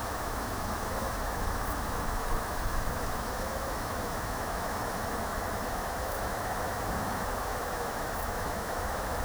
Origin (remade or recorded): remade